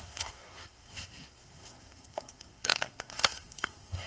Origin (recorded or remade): remade